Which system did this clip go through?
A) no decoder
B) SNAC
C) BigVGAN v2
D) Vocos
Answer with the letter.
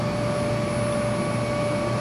A